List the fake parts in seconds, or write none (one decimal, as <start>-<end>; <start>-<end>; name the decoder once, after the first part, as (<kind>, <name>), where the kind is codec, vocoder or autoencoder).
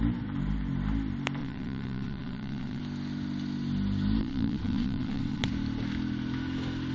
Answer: 1.4-2.8 (vocoder, WaveNeXt); 4.2-5.5